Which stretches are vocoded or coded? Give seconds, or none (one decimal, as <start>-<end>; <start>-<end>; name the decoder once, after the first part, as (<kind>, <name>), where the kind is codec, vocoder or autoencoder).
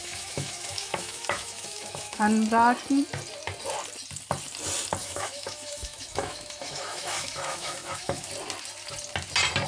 0.0-2.2 (autoencoder, DAC-VAE); 5.0-8.3